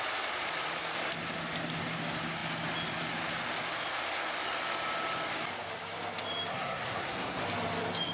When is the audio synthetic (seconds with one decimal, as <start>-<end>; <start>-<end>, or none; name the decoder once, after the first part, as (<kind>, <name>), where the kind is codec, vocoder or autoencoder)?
6.5-7.4 (codec, SNAC)